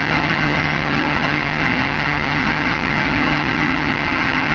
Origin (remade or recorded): remade